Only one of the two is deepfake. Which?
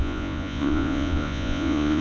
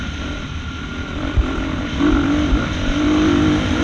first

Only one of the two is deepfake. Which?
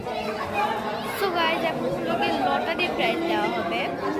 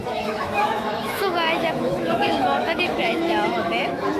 second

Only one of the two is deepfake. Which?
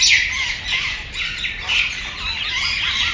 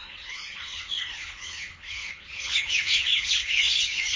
second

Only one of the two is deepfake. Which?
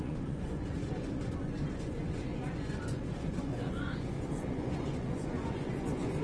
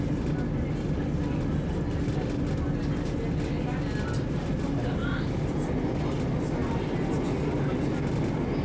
first